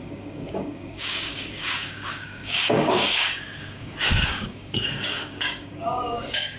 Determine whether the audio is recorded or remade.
remade